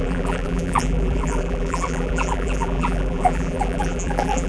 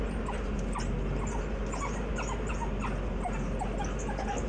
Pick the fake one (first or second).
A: first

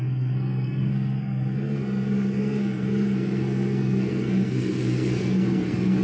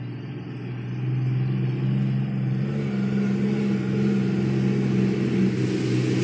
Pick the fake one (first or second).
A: first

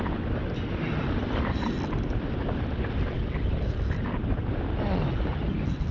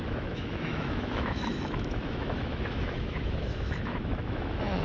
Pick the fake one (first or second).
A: second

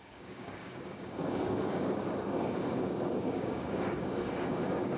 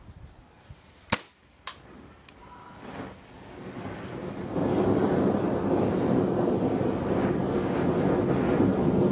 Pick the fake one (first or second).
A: first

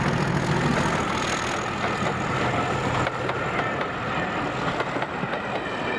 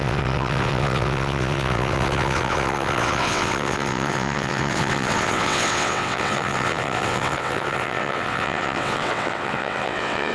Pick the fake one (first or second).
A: second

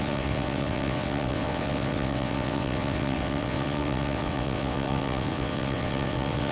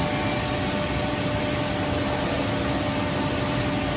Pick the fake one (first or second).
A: first